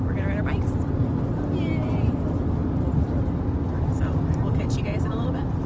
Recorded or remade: recorded